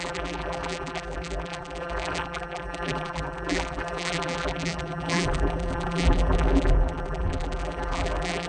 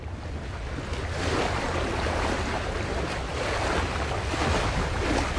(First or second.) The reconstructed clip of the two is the first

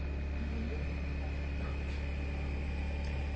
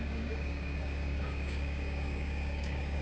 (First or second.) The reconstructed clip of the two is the second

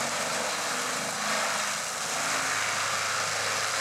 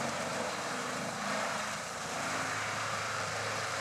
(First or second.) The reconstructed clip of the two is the second